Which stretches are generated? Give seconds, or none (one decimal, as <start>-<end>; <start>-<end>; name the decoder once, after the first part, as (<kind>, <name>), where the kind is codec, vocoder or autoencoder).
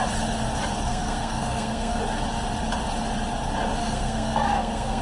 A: 0.9-2.0 (codec, SNAC); 3.8-5.0